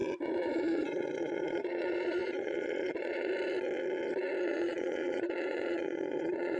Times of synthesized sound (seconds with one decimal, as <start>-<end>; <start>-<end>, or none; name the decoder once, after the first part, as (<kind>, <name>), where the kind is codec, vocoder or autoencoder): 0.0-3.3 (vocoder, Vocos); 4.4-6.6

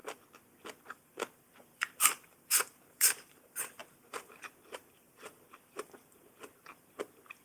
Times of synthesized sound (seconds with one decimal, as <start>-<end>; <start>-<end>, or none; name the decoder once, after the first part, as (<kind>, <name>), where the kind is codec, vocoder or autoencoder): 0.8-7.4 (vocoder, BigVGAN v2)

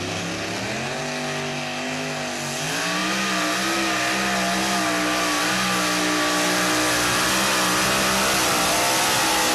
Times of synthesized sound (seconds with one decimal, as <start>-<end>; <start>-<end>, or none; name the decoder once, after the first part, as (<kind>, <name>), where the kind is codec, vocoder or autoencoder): none

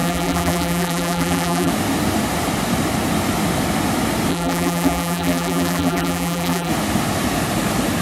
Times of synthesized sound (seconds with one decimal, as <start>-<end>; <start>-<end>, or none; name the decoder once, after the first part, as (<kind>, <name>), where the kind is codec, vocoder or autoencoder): 0.0-1.7 (vocoder, BigVGAN v2); 4.3-6.7

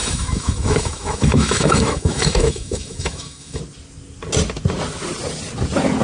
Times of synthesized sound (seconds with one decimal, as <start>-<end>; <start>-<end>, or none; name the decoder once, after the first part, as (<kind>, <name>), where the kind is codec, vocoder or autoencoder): 0.0-3.6 (autoencoder, DAC-VAE)

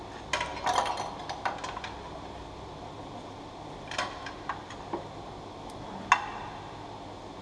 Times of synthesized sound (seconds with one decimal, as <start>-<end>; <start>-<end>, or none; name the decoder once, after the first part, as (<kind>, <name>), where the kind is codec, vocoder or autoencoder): none